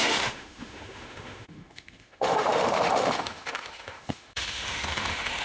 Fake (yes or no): yes